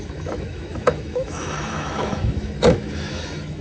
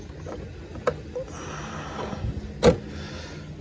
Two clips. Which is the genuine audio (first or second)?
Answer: second